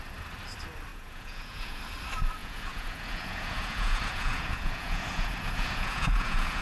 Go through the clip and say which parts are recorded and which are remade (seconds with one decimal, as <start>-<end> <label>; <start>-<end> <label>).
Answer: 0.0-0.9 recorded; 0.9-1.8 remade; 1.8-2.4 recorded; 2.4-6.6 remade